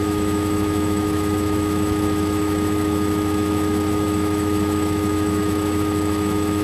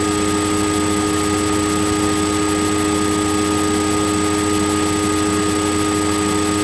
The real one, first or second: second